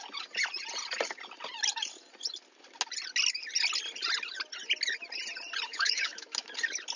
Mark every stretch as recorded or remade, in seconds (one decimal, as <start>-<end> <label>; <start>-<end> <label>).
0.0-5.7 recorded; 5.7-6.4 remade; 6.4-7.0 recorded